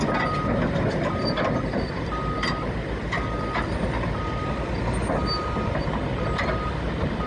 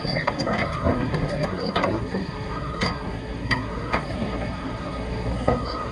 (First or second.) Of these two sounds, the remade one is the second